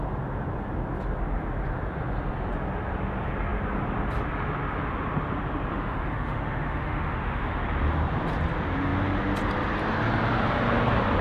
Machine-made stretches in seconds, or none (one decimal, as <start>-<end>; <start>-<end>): 5.7-7.6